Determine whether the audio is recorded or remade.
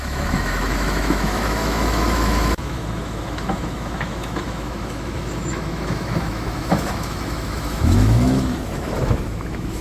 remade